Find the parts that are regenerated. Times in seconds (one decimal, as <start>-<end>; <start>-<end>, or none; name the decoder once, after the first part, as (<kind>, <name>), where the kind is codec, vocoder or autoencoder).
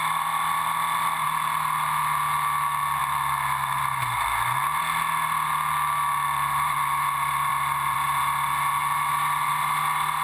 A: none